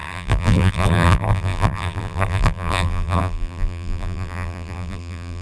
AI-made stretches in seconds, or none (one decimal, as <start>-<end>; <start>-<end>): 0.0-5.4